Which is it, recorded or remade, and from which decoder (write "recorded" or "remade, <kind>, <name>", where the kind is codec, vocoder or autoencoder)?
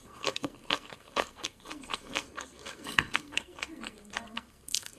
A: remade, codec, SNAC